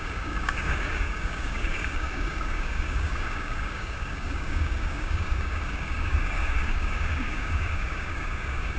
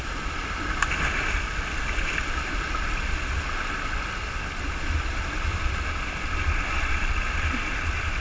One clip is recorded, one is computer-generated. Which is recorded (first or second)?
second